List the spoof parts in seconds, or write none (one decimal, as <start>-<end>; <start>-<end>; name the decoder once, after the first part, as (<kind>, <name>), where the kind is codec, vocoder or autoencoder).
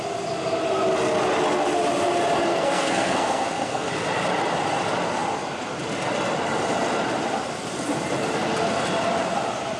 2.5-3.9 (codec, SNAC)